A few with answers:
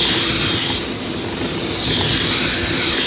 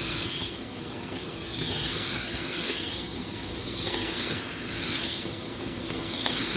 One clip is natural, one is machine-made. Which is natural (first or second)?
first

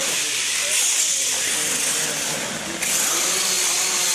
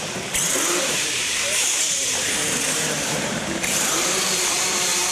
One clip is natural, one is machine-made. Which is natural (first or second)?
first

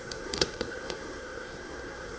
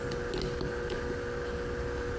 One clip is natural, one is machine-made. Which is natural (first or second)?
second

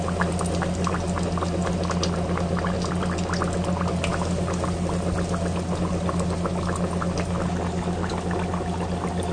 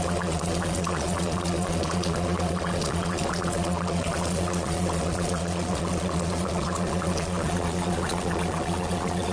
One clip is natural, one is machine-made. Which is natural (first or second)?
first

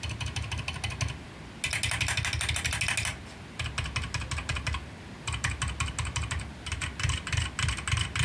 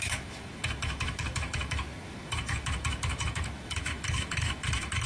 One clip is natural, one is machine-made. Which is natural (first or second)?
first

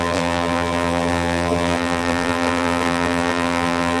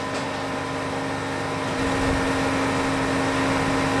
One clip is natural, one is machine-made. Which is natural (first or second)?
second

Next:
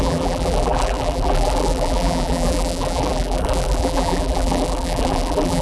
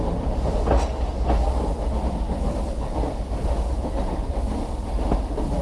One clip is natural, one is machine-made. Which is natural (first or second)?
second